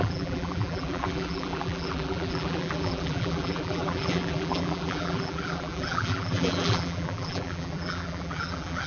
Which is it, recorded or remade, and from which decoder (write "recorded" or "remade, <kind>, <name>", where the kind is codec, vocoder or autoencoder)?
remade, vocoder, BigVGAN v2